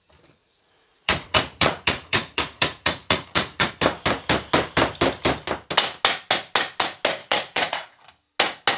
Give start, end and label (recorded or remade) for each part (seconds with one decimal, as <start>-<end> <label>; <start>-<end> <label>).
0.0-0.4 recorded; 0.4-3.7 remade; 3.7-7.2 recorded; 7.2-8.0 remade; 8.0-8.8 recorded